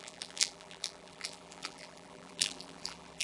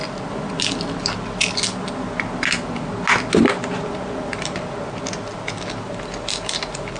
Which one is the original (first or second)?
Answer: second